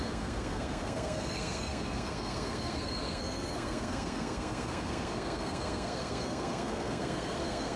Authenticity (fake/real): fake